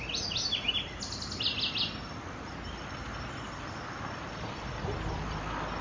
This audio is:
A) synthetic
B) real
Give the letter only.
B